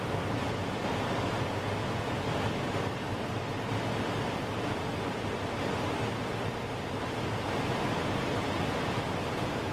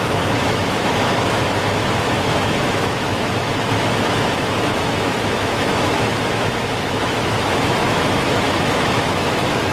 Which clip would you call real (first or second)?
first